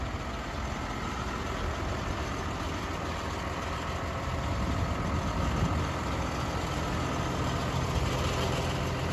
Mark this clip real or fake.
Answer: real